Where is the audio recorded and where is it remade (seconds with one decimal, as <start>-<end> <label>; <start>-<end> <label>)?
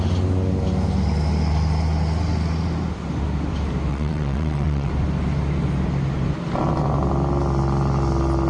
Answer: 0.0-3.9 recorded; 3.9-4.9 remade; 4.9-8.5 recorded